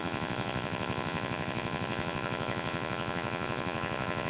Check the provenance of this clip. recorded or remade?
remade